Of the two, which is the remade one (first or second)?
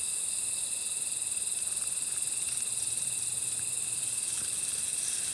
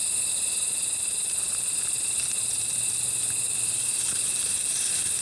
first